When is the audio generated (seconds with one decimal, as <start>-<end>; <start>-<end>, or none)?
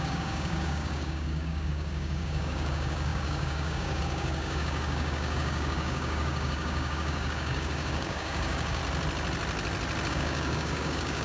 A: 0.0-8.8; 10.1-11.2